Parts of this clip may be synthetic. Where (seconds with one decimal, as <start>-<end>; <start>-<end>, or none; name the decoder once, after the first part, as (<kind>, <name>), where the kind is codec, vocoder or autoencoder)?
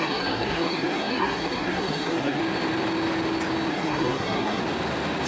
0.0-2.4 (codec, SNAC); 3.7-4.6